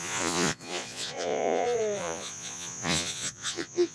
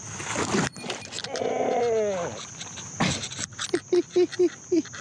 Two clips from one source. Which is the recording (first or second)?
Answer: second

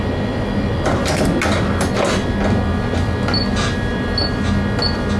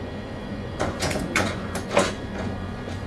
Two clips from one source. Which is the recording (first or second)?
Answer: first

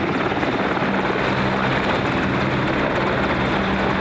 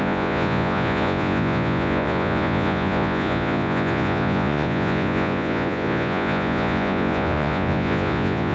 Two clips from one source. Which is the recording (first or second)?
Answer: first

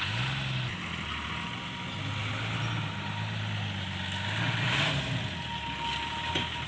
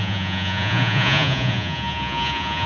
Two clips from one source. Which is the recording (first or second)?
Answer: first